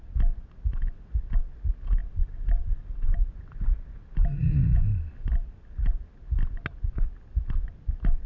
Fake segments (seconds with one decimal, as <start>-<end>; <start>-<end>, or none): 2.0-3.1